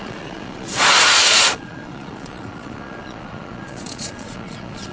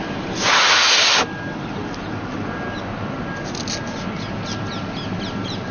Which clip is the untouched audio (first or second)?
second